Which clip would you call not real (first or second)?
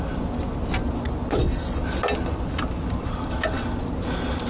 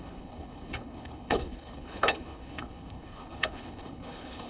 second